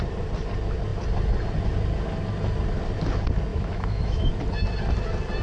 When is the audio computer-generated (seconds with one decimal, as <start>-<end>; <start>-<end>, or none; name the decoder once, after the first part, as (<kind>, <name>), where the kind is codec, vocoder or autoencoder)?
3.5-4.3 (autoencoder, DAC-VAE)